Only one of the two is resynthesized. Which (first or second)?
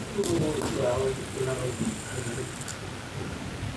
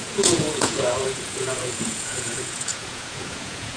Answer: second